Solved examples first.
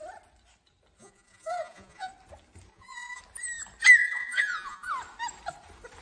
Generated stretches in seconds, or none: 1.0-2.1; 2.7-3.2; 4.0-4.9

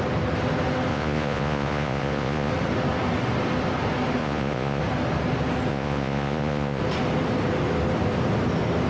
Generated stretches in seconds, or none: 0.9-2.5; 4.2-4.8; 5.7-6.8

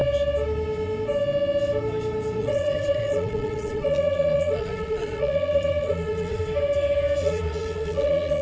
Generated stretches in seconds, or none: 2.4-6.4; 7.2-8.4

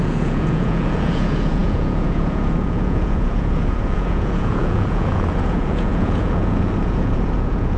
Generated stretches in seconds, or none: 0.0-7.8

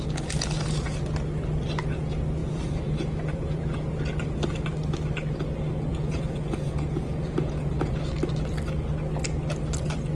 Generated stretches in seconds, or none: 2.4-4.0; 5.9-8.0

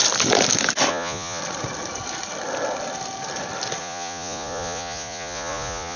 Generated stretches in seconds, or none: 0.9-1.4; 3.8-6.0